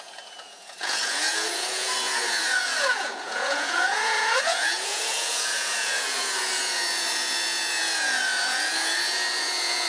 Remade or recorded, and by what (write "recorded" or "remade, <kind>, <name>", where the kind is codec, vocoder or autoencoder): remade, vocoder, Vocos